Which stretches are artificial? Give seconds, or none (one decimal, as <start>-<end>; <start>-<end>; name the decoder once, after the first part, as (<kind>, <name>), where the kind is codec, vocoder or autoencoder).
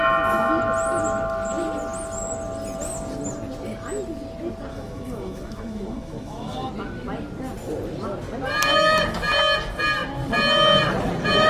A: 4.7-6.7 (autoencoder, DAC-VAE)